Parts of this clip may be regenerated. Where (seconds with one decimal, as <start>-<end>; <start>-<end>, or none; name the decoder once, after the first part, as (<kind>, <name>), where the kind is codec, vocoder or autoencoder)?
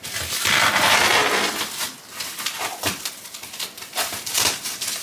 0.0-1.1 (vocoder, BigVGAN v2); 4.1-5.0